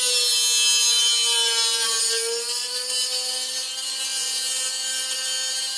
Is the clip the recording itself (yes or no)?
yes